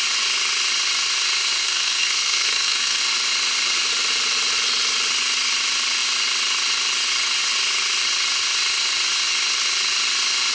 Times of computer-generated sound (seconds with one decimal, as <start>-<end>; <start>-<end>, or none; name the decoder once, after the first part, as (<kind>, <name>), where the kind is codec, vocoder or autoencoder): 1.6-3.0 (codec, SNAC)